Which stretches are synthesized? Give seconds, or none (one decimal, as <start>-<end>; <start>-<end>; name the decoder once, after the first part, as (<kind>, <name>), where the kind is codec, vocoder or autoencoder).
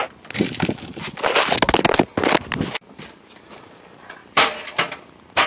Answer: 4.2-5.5 (vocoder, BigVGAN v2)